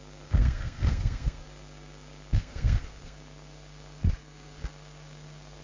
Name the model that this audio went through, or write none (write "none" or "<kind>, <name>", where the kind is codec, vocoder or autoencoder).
codec, SNAC